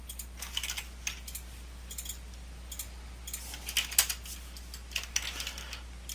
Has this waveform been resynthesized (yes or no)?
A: no